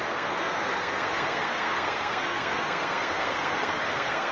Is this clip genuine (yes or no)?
no